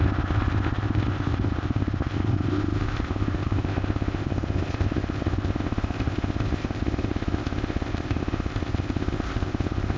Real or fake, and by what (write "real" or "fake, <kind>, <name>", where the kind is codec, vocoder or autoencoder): fake, codec, ZipCodec